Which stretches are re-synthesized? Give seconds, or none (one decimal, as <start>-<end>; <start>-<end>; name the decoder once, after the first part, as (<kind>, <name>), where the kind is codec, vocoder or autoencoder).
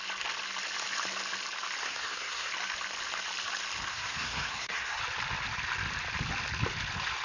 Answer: 1.8-2.5 (codec, SNAC); 3.9-5.0